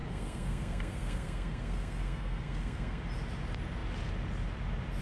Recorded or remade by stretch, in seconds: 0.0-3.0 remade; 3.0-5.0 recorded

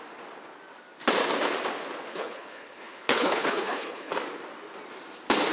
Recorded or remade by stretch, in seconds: 0.0-2.1 recorded; 2.1-4.1 remade; 4.1-5.5 recorded

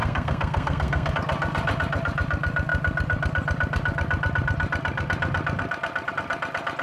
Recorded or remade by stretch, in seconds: 0.0-1.1 remade; 1.1-6.8 recorded

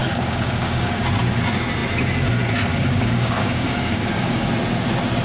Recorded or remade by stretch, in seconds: 0.0-1.0 remade; 1.0-2.7 recorded; 2.7-4.5 remade; 4.5-5.2 recorded